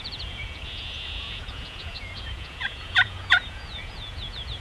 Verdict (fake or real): fake